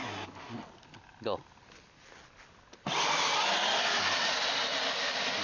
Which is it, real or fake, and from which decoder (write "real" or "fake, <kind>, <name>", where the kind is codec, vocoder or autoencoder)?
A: real